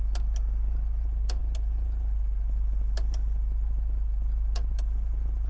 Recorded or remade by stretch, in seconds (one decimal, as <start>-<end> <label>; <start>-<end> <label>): 0.0-5.5 recorded